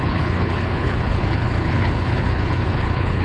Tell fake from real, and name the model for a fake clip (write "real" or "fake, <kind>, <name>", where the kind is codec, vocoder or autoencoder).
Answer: fake, codec, HILCodec